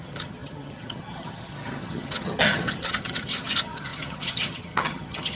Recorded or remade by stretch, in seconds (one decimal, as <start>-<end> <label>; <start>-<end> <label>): 0.0-5.4 remade